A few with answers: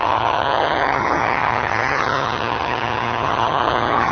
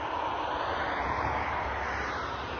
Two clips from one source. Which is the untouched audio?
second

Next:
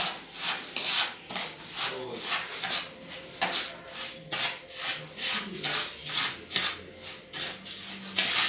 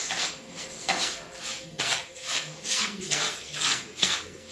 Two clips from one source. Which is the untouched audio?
first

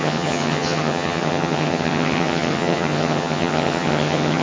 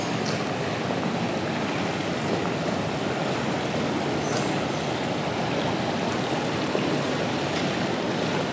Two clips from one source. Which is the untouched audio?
second